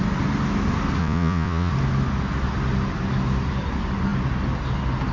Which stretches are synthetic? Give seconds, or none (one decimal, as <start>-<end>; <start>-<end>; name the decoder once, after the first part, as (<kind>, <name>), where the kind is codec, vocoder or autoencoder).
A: 1.0-1.7 (vocoder, Vocos)